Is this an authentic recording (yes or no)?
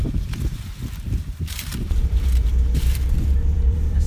no